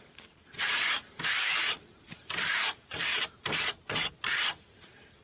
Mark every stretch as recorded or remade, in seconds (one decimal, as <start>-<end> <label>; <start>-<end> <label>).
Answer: 0.0-3.1 remade; 3.1-4.1 recorded; 4.1-5.2 remade